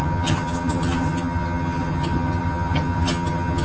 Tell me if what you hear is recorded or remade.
remade